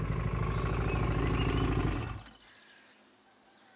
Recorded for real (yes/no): yes